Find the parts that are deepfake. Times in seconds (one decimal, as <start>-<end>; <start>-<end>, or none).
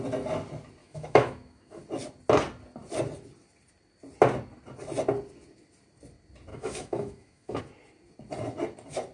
0.8-1.8; 6.5-7.6